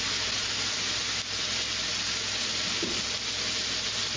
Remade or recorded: recorded